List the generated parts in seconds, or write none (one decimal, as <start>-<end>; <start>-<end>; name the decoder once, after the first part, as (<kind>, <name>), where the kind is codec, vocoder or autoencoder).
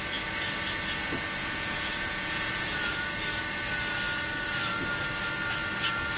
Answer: 1.4-2.9 (vocoder, Vocos)